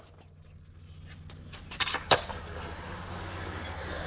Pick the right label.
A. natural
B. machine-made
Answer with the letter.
A